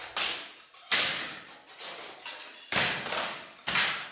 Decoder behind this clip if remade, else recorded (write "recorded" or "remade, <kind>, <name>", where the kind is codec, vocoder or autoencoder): recorded